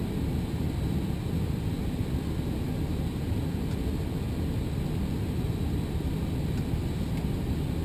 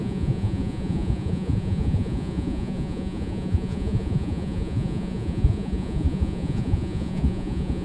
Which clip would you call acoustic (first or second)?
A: first